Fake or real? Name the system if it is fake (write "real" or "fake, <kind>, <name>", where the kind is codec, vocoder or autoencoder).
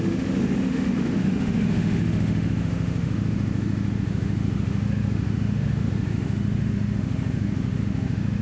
fake, autoencoder, DAC-VAE